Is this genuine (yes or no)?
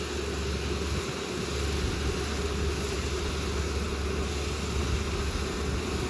yes